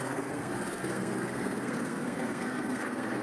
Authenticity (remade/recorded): remade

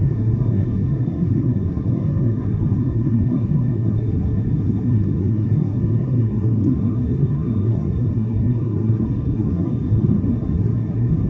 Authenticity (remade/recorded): remade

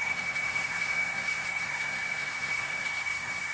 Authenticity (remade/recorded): remade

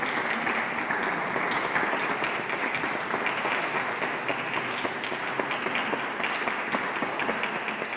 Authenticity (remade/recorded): recorded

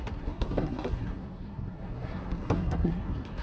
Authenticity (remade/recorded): remade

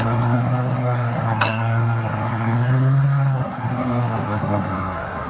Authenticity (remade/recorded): remade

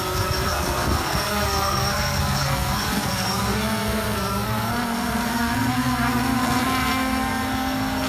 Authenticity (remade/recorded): remade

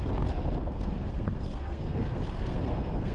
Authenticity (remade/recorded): remade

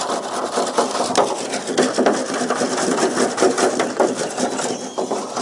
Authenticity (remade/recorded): recorded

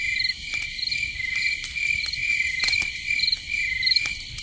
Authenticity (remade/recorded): recorded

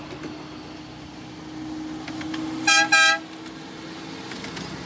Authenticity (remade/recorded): recorded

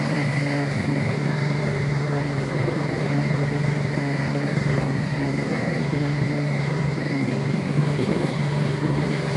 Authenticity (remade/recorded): remade